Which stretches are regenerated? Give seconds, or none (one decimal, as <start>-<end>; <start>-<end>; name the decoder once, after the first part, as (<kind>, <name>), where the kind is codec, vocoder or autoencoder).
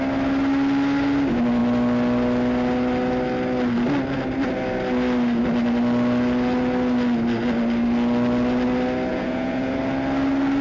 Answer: 9.1-9.8 (vocoder, Vocos)